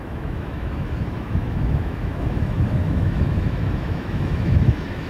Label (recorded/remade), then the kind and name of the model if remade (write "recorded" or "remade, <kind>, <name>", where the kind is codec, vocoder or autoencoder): remade, autoencoder, DAC-VAE